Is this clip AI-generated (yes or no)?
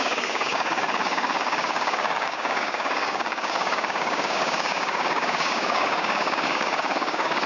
yes